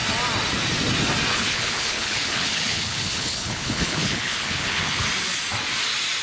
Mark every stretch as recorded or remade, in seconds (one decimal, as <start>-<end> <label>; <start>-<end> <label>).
0.0-1.3 recorded; 1.3-5.0 remade; 5.0-6.2 recorded